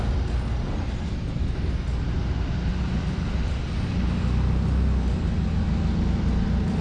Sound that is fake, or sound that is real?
real